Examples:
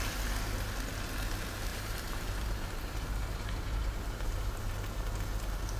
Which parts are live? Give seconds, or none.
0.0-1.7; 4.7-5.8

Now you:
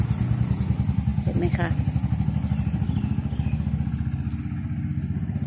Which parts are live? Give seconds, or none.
0.0-5.5

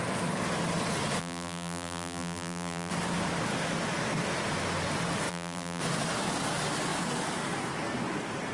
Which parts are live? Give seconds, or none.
0.0-1.2; 2.9-5.3; 5.8-8.5

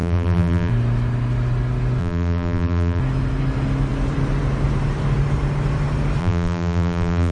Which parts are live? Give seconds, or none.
0.7-2.0; 3.0-6.2

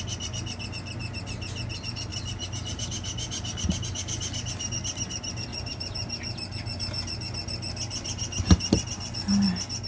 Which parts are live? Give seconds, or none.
0.0-2.1; 2.8-5.5; 6.1-9.9

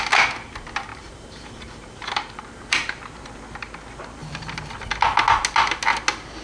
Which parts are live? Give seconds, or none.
0.0-0.9; 3.4-6.4

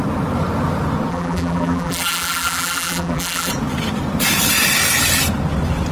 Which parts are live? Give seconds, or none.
0.0-1.1; 3.5-5.9